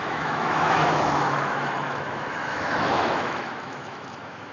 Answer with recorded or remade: remade